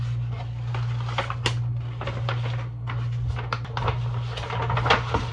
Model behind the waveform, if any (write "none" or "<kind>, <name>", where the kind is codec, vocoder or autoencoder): none